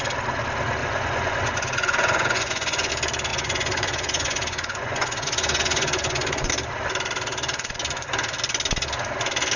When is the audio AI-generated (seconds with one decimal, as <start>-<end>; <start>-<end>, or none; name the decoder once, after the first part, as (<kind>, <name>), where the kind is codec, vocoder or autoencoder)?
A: 0.8-2.9 (vocoder, Vocos); 3.3-6.5